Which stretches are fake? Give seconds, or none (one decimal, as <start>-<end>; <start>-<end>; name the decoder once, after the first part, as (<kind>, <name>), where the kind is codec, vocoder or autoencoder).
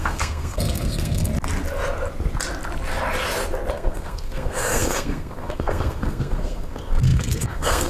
0.0-1.3 (codec, SNAC); 3.7-7.9